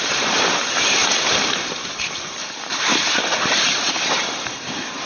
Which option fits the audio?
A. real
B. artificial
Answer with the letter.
B